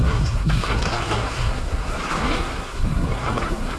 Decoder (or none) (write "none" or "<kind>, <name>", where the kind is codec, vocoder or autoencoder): codec, SNAC